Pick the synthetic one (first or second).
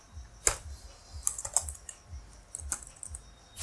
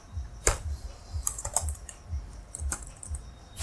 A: second